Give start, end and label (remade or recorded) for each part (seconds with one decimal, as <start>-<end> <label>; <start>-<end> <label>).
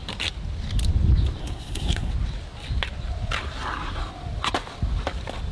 0.0-1.4 recorded; 1.4-2.1 remade; 2.1-5.5 recorded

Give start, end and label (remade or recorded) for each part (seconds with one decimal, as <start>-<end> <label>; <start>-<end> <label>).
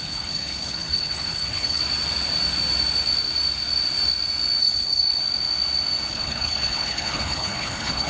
0.0-1.8 remade; 1.8-4.6 recorded; 4.6-5.2 remade; 5.2-6.1 recorded; 6.1-8.1 remade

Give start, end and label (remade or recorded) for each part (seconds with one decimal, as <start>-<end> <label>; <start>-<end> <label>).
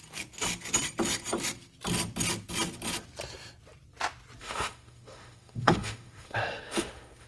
0.0-4.4 recorded; 4.4-7.3 remade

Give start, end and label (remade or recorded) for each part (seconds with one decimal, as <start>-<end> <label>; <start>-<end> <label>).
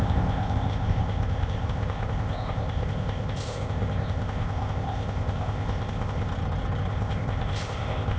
0.0-6.3 remade; 6.3-6.9 recorded; 6.9-8.2 remade